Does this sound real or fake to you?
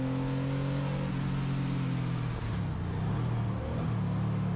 real